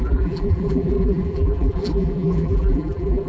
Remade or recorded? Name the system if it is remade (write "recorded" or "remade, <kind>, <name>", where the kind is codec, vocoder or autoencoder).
remade, vocoder, BigVGAN v2